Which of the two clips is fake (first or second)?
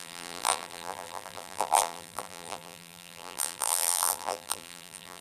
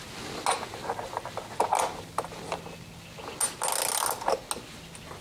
first